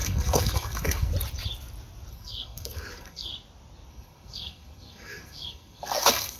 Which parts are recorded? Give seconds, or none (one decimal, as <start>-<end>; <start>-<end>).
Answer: 1.1-2.1; 3.3-3.9